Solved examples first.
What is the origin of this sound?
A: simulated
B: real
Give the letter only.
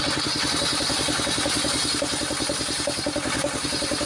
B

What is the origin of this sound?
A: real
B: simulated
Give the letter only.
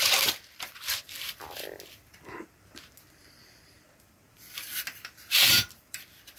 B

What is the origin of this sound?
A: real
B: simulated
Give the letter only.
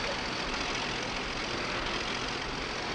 A